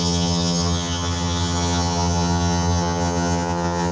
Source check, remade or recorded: remade